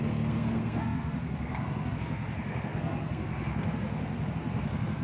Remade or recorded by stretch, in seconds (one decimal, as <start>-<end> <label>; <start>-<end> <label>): 0.0-5.0 remade